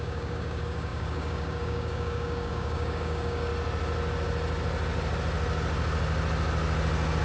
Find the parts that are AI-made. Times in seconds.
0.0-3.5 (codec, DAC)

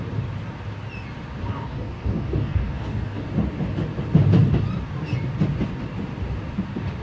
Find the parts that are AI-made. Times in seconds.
1.5-3.2 (codec, DAC)